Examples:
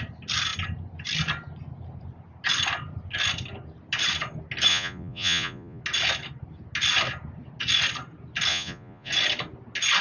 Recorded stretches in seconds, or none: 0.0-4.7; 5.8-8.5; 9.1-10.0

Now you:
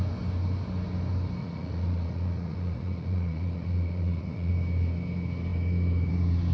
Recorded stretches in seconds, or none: 0.0-1.4; 4.5-6.5

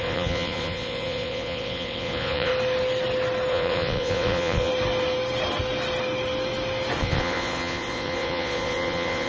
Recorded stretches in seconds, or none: 2.5-3.5; 4.7-7.0

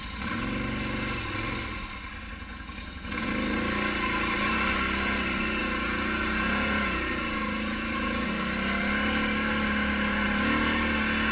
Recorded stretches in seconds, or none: 0.0-2.3; 3.3-5.6; 8.3-11.3

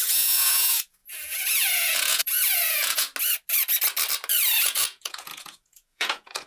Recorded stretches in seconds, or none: 3.1-4.6